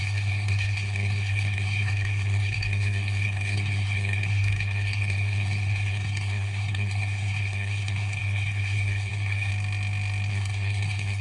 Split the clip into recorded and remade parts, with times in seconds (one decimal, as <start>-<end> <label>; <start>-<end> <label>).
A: 0.0-9.5 remade; 9.5-10.3 recorded; 10.3-11.2 remade